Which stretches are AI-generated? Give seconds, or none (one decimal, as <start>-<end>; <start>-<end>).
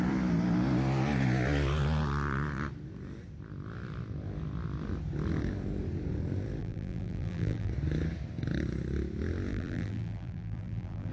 6.6-7.7; 9.5-11.1